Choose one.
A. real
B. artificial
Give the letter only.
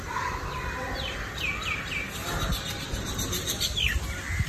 A